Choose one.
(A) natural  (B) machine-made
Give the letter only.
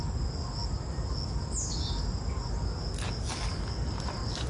A